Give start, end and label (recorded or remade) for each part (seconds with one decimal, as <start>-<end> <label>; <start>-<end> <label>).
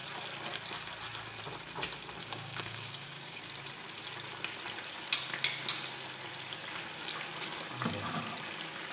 0.0-2.2 recorded; 2.2-3.4 remade; 3.4-8.9 recorded